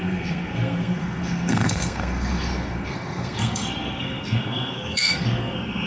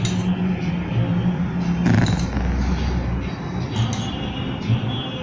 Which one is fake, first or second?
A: first